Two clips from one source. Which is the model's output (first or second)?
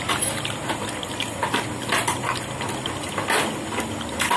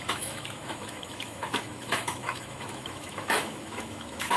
second